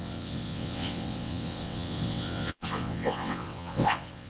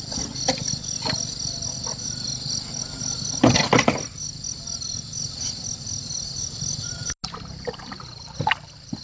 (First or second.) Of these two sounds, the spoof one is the first